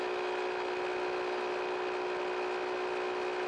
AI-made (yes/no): no